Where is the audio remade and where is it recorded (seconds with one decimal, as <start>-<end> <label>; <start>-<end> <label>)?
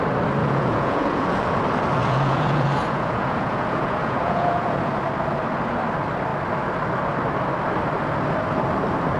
0.0-0.4 recorded; 0.4-1.6 remade; 1.6-2.0 recorded; 2.0-4.9 remade; 4.9-9.2 recorded